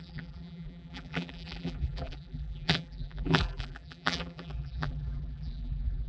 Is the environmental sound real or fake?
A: fake